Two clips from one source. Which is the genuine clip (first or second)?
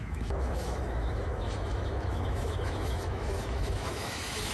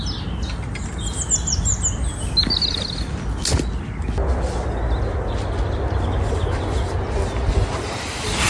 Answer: second